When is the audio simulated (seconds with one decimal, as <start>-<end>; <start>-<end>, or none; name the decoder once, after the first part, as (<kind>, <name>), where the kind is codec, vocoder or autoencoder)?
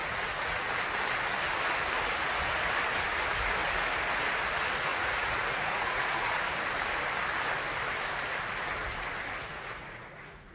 0.0-0.7 (vocoder, Vocos); 4.9-6.4; 9.5-10.5